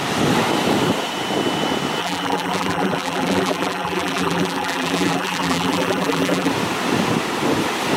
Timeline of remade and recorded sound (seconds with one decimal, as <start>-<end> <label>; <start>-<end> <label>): 0.0-2.0 recorded; 2.0-6.5 remade; 6.5-8.0 recorded